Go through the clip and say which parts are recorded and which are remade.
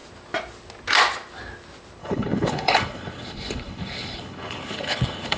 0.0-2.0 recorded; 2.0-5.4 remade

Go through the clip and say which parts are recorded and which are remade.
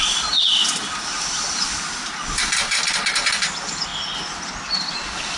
0.0-5.4 recorded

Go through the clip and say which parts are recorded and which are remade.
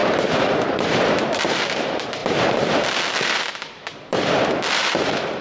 0.0-0.6 recorded; 0.6-5.4 remade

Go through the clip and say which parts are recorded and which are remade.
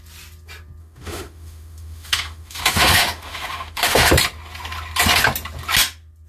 0.0-0.8 recorded; 0.8-4.1 remade; 4.1-6.3 recorded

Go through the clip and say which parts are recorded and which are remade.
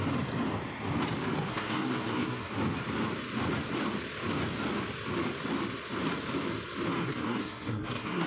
0.0-1.5 recorded; 1.5-2.5 remade; 2.5-7.0 recorded; 7.0-8.3 remade